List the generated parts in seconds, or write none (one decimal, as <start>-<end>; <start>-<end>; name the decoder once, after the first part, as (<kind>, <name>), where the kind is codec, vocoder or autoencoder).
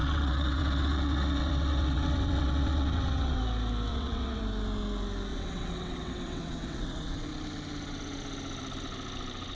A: 0.0-3.4 (vocoder, WaveNeXt); 3.9-4.4; 5.3-7.3